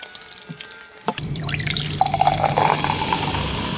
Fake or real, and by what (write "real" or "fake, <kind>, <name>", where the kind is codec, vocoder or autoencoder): fake, vocoder, BigVGAN v2